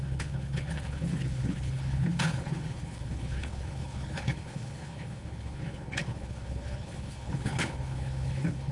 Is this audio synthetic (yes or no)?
yes